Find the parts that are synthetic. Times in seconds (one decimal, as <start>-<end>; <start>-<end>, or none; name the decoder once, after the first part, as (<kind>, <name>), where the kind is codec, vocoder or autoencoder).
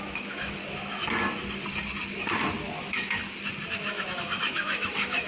0.0-0.6 (autoencoder, DAC-VAE); 2.8-3.2; 3.7-5.3